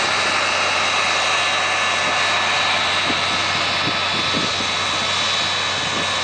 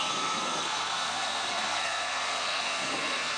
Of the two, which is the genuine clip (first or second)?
first